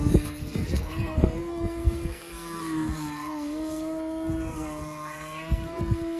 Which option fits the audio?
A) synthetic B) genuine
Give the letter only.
A